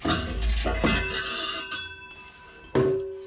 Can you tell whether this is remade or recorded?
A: recorded